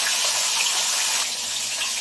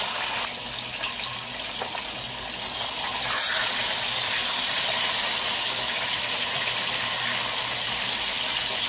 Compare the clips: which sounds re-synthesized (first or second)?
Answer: first